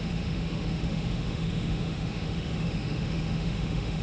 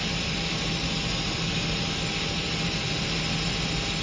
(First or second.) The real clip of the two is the second